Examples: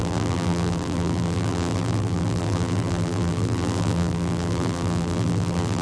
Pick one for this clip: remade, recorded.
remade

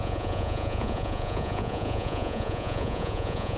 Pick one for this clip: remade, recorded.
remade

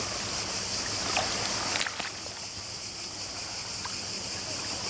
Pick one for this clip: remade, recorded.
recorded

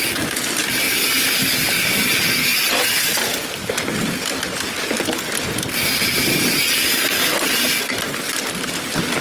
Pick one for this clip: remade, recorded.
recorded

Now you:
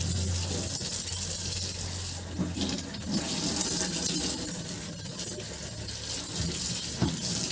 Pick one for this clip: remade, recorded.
recorded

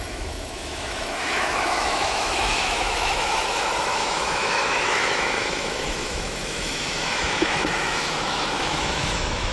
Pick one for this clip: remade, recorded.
remade